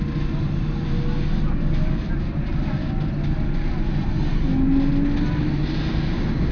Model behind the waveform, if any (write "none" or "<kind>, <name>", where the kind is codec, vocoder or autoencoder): none